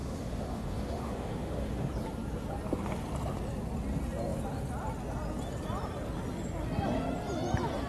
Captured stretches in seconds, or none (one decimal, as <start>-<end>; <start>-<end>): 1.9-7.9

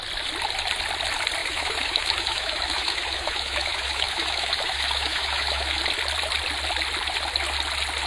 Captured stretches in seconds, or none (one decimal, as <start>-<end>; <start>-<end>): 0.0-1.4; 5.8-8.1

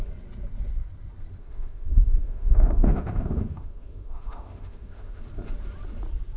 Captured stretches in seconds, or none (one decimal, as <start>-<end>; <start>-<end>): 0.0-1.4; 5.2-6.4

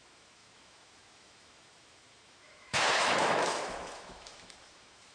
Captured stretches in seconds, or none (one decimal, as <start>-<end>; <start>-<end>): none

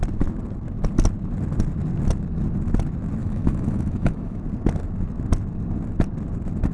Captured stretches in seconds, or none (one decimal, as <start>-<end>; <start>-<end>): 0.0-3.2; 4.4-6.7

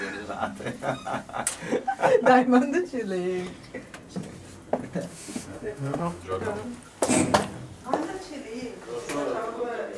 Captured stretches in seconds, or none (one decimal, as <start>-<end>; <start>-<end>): 0.0-5.1; 6.2-10.0